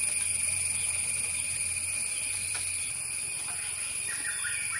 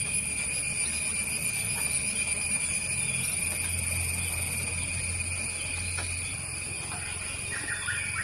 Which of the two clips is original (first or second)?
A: second